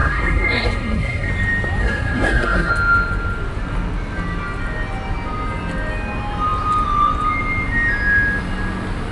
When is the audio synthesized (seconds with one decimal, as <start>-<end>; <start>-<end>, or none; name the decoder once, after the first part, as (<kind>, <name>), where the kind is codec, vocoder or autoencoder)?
0.0-1.3 (codec, SNAC); 1.8-2.7